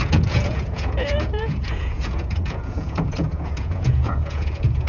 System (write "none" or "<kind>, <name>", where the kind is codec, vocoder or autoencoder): vocoder, Vocos